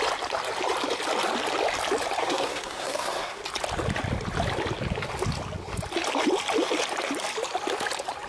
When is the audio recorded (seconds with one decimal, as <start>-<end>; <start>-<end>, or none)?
0.0-2.2; 3.4-8.3